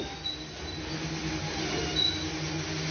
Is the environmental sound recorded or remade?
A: recorded